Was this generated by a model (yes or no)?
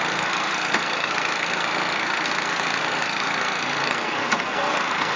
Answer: yes